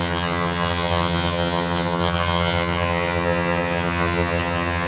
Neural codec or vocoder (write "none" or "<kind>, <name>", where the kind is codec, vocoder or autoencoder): vocoder, HiFi-GAN